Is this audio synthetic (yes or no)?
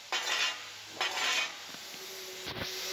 no